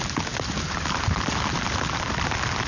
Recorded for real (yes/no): yes